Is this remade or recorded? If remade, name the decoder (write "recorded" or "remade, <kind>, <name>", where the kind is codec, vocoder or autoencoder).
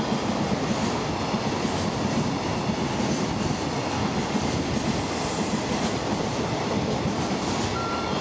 recorded